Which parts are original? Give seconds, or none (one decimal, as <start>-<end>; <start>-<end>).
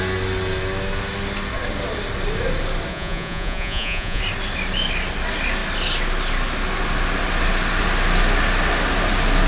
0.0-2.9; 4.2-9.5